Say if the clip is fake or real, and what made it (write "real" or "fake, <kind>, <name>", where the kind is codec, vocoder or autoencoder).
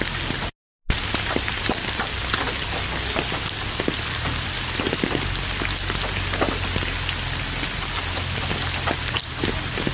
real